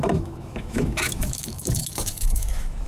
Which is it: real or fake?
fake